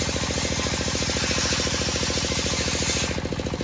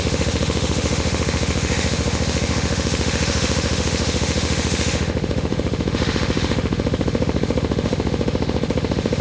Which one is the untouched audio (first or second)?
first